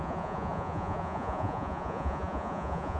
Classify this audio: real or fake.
fake